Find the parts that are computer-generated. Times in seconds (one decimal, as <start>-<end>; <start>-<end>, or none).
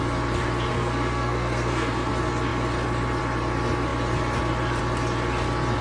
0.7-2.1